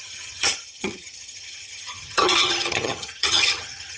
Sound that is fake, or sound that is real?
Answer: fake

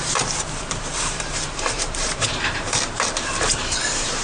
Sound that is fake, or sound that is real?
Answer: fake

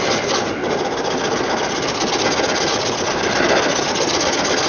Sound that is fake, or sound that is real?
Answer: real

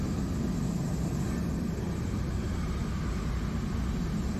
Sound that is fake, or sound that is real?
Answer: real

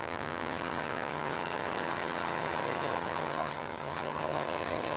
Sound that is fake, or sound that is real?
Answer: fake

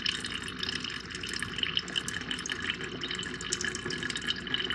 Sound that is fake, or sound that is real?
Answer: real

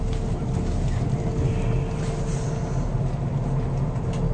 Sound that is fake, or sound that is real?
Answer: real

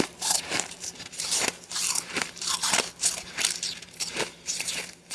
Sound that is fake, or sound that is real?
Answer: fake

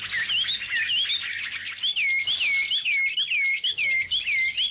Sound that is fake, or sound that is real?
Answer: real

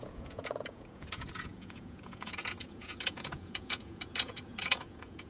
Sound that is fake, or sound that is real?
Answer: fake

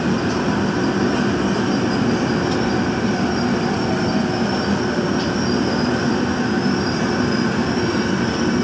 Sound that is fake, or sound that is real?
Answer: real